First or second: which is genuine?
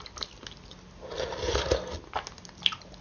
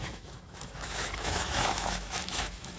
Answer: first